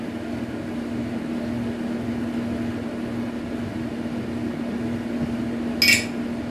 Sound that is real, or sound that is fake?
real